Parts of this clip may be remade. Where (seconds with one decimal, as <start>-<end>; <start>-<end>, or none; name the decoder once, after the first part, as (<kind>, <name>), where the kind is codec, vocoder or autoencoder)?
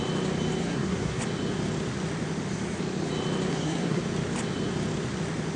0.6-1.2 (codec, SNAC); 3.5-4.0